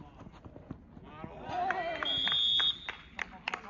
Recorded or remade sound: recorded